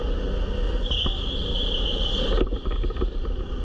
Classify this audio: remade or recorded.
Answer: recorded